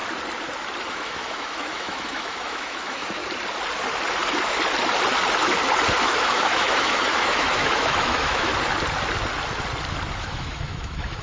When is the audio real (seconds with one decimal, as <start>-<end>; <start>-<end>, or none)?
0.0-0.9; 3.2-6.0; 8.5-10.2

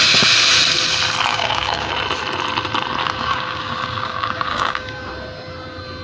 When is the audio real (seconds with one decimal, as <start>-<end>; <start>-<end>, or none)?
0.0-1.3; 1.9-3.0; 5.1-6.0